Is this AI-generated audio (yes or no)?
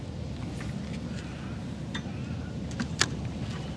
no